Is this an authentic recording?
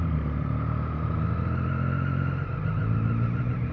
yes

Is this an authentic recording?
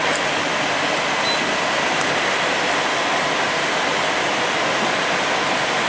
yes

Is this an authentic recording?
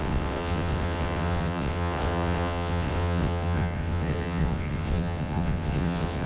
no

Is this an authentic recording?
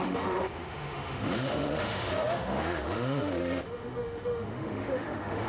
no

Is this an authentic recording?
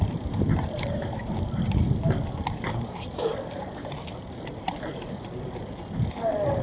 no